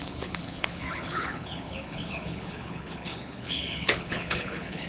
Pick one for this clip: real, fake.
fake